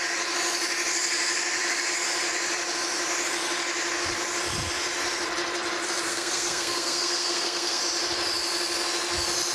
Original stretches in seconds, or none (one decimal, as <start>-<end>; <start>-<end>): 0.0-6.1; 7.8-9.5